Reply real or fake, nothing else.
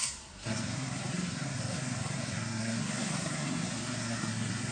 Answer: fake